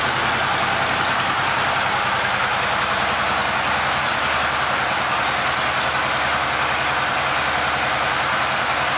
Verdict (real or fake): real